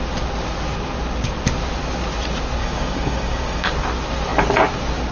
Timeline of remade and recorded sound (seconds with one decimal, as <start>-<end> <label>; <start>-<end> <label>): 0.0-2.6 recorded; 2.6-3.7 remade; 3.7-5.1 recorded